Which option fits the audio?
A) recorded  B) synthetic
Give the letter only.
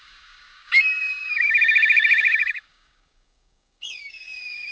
B